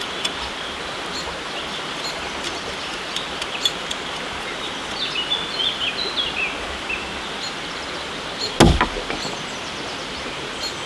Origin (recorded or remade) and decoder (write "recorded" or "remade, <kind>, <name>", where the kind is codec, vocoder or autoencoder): recorded